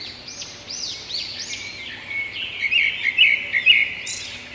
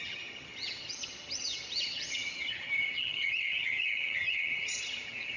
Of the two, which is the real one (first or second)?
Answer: first